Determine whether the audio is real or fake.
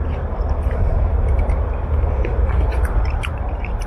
fake